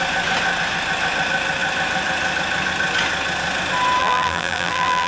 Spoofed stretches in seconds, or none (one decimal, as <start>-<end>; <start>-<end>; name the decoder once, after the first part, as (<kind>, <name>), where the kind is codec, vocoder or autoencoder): 4.0-5.1 (vocoder, BigVGAN v2)